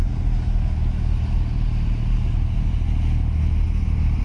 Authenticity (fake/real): real